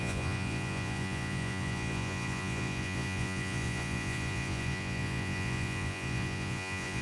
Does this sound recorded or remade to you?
remade